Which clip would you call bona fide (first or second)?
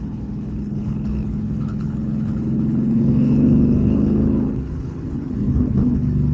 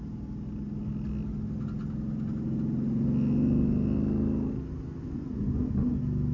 second